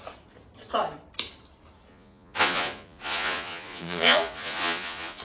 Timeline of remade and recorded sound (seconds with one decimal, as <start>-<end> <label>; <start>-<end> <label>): 0.0-1.9 recorded; 1.9-5.2 remade